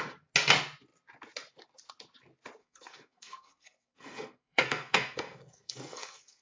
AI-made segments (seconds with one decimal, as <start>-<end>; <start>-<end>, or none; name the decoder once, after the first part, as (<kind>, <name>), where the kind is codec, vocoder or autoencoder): 2.6-6.4 (codec, SNAC)